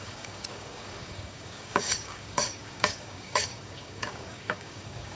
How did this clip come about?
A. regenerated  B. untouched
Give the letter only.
A